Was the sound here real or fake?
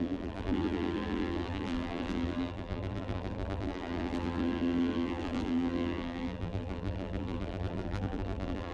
fake